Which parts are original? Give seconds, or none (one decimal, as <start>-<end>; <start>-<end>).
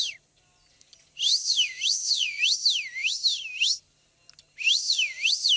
0.0-1.9; 2.4-5.6